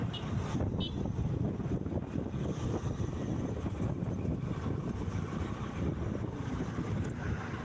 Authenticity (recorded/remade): recorded